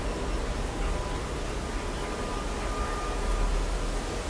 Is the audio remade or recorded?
recorded